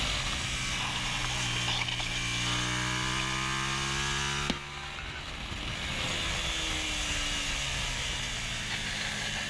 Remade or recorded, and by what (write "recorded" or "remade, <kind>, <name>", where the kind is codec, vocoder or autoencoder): recorded